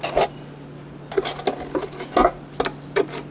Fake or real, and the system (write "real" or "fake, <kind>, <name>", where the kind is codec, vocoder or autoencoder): real